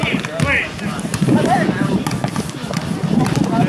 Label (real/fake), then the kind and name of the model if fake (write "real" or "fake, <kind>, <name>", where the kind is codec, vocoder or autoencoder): real